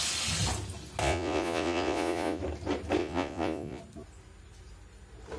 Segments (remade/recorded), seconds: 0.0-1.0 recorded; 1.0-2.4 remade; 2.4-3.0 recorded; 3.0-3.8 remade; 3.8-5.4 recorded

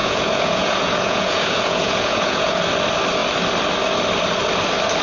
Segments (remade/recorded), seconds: 0.0-2.6 remade; 2.6-5.0 recorded

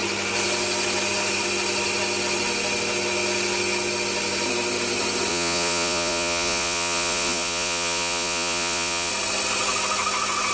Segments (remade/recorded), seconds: 0.0-5.3 recorded; 5.3-9.1 remade; 9.1-10.5 recorded

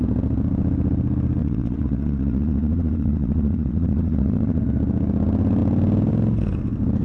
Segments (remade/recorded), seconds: 0.0-1.4 recorded; 1.4-4.6 remade; 4.6-7.0 recorded

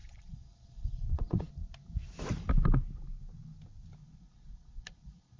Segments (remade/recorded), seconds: 0.0-1.5 remade; 1.5-4.0 recorded; 4.0-5.4 remade

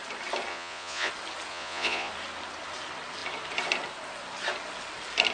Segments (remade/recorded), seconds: 0.0-0.5 recorded; 0.5-1.1 remade; 1.1-1.5 recorded; 1.5-2.1 remade; 2.1-5.3 recorded

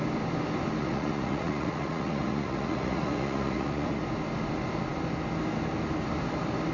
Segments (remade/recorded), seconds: 0.0-0.8 recorded; 0.8-4.0 remade; 4.0-6.7 recorded